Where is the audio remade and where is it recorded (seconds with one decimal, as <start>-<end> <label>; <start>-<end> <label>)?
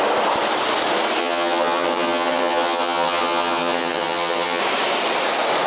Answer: 0.0-1.2 recorded; 1.2-4.6 remade; 4.6-5.7 recorded